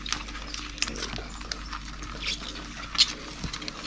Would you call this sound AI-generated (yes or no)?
no